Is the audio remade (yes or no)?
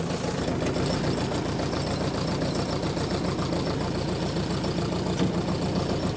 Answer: no